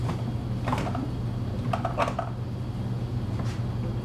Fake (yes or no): no